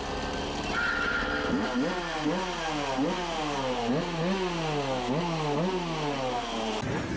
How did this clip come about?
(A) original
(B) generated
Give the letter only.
A